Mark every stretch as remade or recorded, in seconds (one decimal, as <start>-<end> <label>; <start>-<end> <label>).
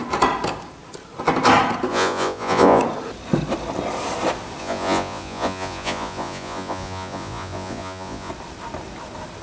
0.0-1.9 recorded; 1.9-2.8 remade; 2.8-4.6 recorded; 4.6-8.3 remade; 8.3-9.4 recorded